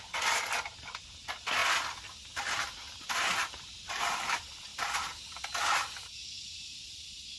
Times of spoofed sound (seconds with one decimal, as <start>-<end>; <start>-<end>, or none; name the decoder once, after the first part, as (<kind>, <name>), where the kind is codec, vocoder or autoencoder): none